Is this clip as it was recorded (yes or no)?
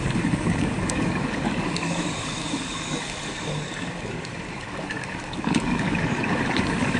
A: no